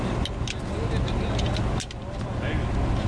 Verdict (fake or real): real